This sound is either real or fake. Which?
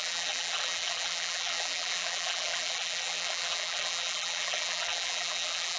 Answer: fake